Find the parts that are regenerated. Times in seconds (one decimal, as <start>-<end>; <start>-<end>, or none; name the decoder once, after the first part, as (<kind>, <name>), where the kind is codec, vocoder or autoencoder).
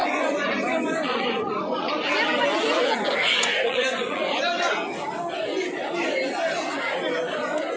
0.0-1.9 (vocoder, Vocos); 3.2-4.7